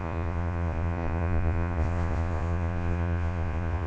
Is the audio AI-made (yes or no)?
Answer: yes